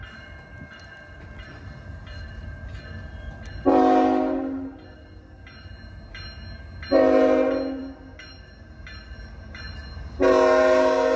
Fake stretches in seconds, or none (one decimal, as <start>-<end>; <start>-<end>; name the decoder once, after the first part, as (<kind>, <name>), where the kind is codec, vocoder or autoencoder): none

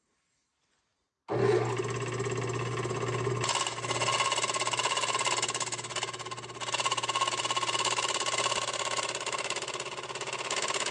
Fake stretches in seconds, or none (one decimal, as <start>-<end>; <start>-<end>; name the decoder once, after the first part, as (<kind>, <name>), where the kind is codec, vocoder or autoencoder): none

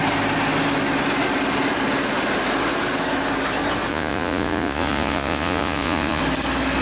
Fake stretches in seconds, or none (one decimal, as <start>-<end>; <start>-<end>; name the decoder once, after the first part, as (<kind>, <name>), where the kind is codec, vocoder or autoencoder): 3.9-6.2 (vocoder, Vocos)

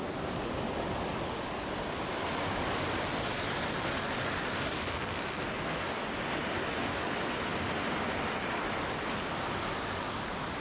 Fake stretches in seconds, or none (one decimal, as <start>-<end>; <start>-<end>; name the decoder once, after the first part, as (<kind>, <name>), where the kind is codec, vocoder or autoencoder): none

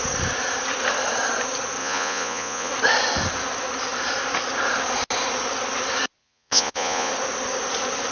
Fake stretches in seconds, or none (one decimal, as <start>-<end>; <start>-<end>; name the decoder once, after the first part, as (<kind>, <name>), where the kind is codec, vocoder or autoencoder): 1.8-2.7 (vocoder, Vocos); 6.2-7.1

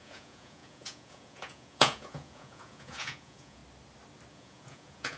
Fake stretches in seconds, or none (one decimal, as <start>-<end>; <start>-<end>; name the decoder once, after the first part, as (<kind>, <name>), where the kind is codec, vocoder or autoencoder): 0.0-3.6 (vocoder, Vocos); 4.3-5.2